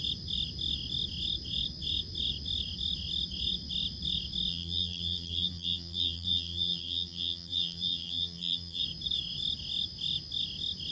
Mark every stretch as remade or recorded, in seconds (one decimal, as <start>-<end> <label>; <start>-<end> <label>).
0.0-4.5 recorded; 4.5-8.8 remade; 8.8-10.9 recorded